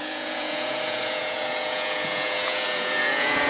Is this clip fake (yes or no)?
yes